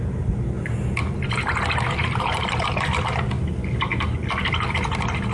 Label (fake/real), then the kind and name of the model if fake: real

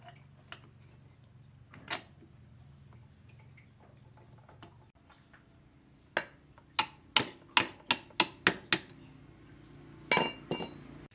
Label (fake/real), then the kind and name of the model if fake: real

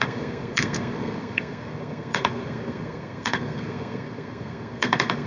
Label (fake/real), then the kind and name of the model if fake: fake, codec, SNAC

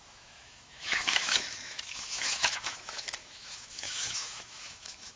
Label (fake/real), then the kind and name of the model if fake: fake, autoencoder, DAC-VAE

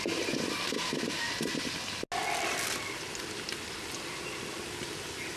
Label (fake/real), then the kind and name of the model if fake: real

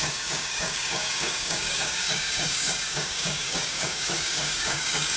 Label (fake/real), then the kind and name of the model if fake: fake, codec, DAC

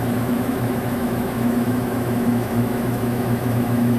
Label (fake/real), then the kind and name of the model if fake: fake, autoencoder, DAC-VAE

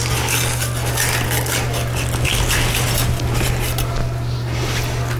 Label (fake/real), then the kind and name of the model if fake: real